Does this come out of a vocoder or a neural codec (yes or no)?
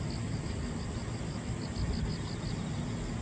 no